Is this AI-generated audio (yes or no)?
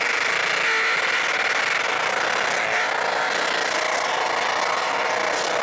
no